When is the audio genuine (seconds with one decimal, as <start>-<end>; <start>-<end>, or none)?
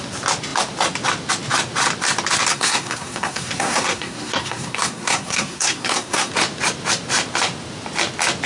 0.0-2.5; 6.3-8.5